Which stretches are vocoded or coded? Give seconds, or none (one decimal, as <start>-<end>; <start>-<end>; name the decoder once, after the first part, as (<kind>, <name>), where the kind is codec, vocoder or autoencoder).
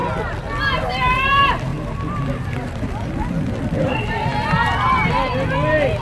0.6-4.3 (vocoder, BigVGAN v2)